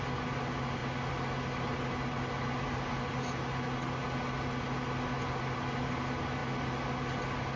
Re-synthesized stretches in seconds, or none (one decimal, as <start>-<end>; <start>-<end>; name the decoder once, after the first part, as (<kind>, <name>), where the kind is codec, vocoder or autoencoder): none